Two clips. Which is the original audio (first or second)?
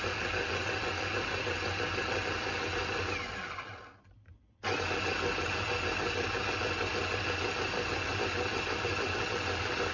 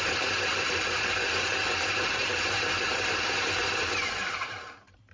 first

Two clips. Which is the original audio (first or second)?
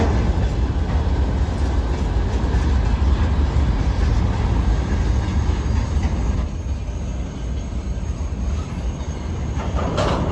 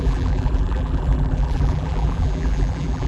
first